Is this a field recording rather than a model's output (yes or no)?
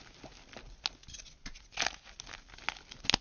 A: yes